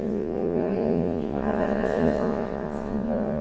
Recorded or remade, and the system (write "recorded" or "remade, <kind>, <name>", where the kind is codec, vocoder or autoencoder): remade, vocoder, Vocos